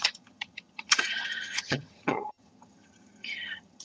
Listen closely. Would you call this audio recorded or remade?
remade